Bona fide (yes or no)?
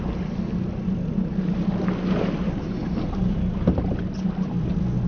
yes